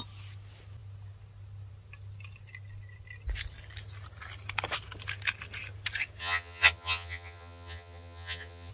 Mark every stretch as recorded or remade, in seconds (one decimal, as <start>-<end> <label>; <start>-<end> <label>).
0.0-6.2 recorded; 6.2-8.7 remade